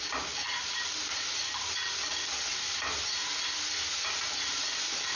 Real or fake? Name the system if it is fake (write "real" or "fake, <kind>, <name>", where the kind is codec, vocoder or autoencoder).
real